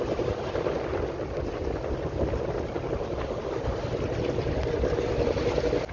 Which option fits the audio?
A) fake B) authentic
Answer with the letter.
B